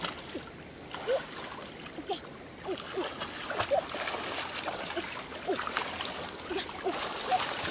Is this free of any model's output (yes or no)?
yes